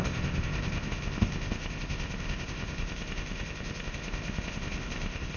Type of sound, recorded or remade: remade